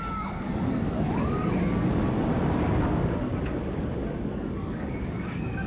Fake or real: fake